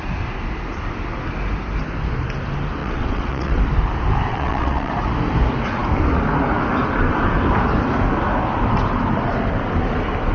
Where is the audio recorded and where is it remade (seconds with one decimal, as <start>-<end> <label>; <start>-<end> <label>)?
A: 0.0-2.8 recorded; 2.8-3.6 remade; 3.6-4.3 recorded; 4.3-4.9 remade; 4.9-10.3 recorded